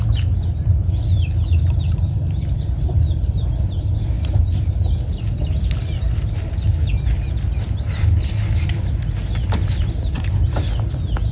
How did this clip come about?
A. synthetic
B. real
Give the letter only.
B